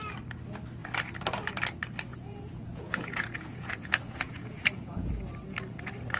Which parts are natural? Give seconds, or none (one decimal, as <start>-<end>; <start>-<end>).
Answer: 0.0-2.1; 5.1-6.2